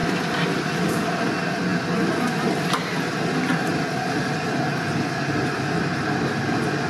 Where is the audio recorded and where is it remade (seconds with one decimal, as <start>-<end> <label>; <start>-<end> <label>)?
0.0-6.9 recorded